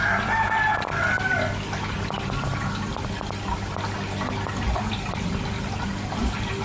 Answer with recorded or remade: recorded